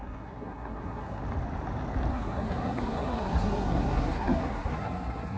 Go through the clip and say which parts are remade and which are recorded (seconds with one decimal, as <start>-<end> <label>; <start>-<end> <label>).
0.0-1.2 remade; 1.2-2.1 recorded; 2.1-5.4 remade